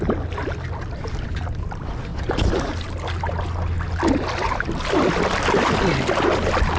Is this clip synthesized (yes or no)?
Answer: no